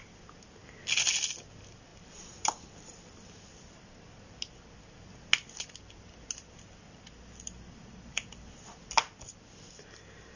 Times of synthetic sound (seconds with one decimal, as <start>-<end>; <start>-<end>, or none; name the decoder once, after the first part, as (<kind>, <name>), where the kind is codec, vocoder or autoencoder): none